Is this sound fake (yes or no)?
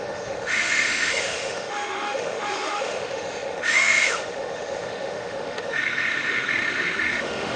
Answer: yes